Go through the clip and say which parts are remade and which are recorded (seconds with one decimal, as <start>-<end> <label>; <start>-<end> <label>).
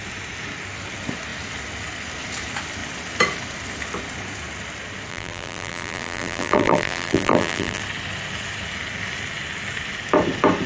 0.0-5.1 recorded; 5.1-7.8 remade; 7.8-10.7 recorded